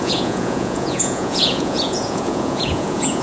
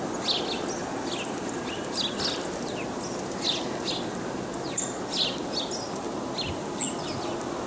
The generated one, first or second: first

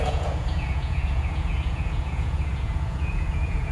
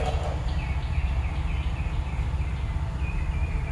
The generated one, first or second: first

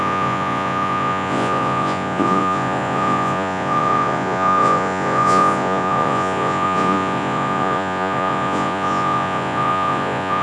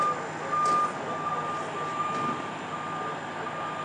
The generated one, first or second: first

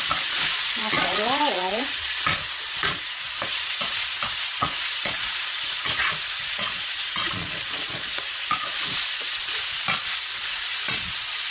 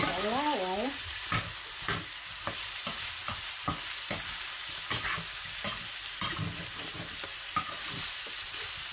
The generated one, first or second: first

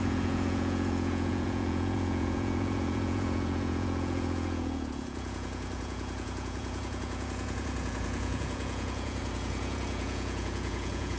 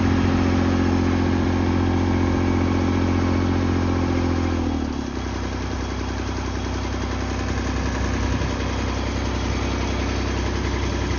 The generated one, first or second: first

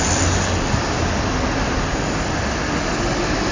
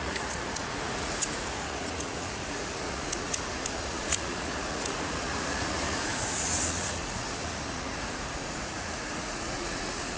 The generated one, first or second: second